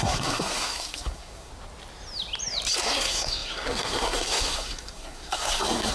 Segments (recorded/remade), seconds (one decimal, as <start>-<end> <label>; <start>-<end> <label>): 0.0-1.5 remade; 1.5-2.8 recorded; 2.8-5.9 remade